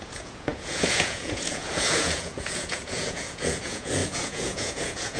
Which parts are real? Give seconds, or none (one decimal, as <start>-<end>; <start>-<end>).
none